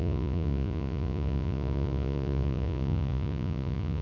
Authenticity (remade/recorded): remade